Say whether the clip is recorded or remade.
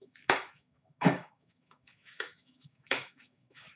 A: remade